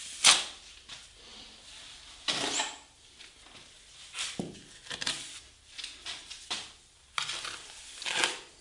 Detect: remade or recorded recorded